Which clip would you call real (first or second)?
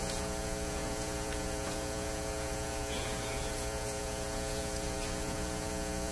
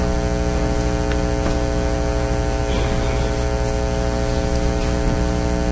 second